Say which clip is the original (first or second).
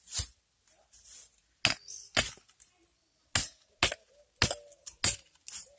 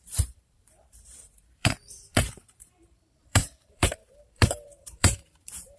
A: first